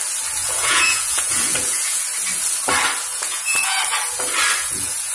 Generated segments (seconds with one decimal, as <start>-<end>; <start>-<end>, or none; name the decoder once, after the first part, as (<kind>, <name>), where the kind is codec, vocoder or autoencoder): 0.4-2.0 (vocoder, Vocos); 3.1-3.8; 4.6-5.1